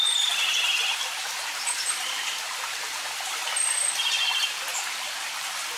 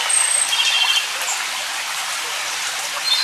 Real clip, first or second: second